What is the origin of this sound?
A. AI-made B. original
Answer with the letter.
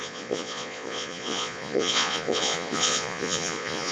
A